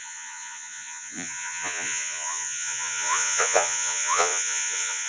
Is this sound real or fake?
fake